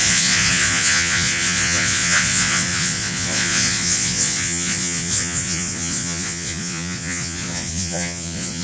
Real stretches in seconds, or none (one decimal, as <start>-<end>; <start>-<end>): none